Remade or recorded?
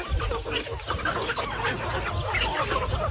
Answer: recorded